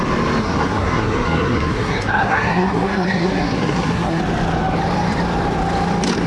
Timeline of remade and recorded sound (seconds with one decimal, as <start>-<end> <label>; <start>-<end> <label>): 0.0-0.4 recorded; 0.4-4.2 remade; 4.2-6.3 recorded